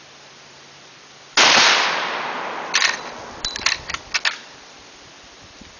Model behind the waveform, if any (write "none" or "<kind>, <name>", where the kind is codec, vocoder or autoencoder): none